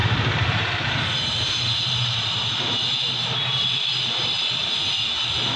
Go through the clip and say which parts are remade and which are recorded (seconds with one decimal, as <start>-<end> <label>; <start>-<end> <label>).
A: 0.0-3.4 remade; 3.4-5.6 recorded